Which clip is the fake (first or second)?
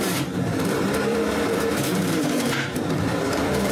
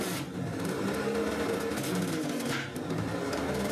first